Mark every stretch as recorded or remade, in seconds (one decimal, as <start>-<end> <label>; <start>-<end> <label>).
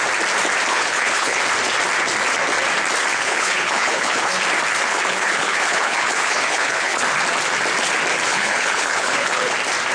0.0-0.7 recorded; 0.7-1.4 remade; 1.4-3.1 recorded; 3.1-4.3 remade; 4.3-4.9 recorded; 4.9-7.0 remade; 7.0-8.3 recorded; 8.3-9.5 remade; 9.5-9.9 recorded